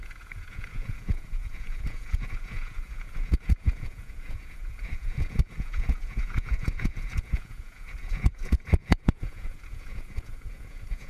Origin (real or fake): fake